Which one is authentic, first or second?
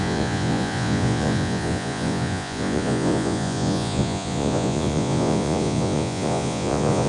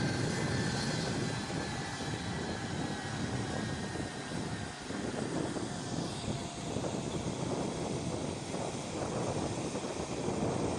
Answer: second